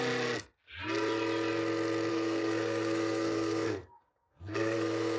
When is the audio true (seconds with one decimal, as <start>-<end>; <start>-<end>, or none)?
0.0-2.1